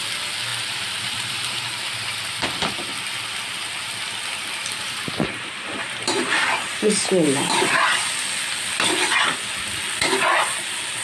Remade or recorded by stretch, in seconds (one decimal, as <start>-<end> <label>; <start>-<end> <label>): 0.0-0.5 recorded; 0.5-2.3 remade; 2.3-4.6 recorded; 4.6-8.2 remade; 8.2-11.0 recorded